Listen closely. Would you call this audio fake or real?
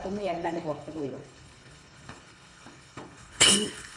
fake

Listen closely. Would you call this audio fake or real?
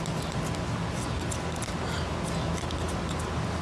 real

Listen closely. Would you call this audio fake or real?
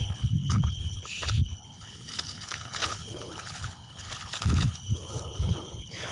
fake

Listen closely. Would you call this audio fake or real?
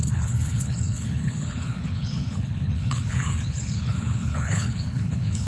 fake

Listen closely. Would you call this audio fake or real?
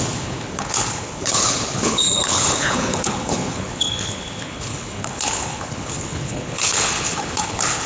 fake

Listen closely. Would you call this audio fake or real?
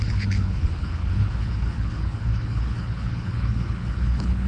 fake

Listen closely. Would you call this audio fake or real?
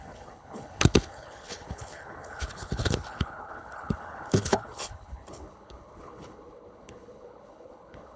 fake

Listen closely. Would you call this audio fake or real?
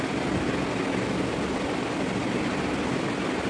real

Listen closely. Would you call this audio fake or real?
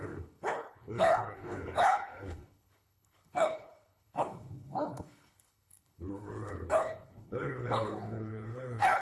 fake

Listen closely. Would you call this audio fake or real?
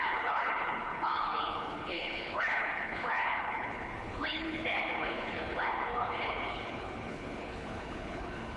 fake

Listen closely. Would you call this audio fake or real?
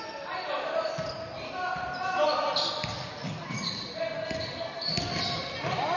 real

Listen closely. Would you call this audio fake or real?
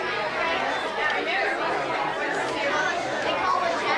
real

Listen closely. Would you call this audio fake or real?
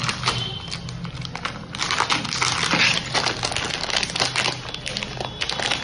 real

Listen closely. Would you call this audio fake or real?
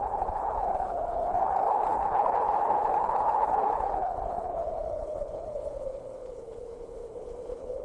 fake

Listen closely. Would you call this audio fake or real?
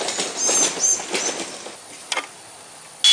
real